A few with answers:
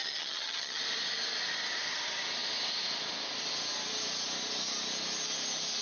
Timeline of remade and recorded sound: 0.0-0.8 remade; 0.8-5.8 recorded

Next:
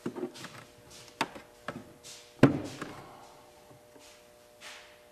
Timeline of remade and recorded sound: 0.0-5.1 recorded

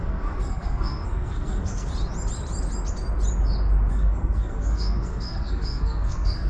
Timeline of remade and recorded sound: 0.0-1.9 remade; 1.9-3.9 recorded; 3.9-6.5 remade